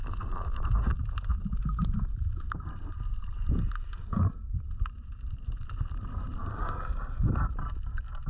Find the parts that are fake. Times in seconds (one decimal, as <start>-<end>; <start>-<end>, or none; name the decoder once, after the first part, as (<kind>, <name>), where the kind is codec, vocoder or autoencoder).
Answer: 0.0-0.7 (vocoder, BigVGAN v2); 1.6-6.6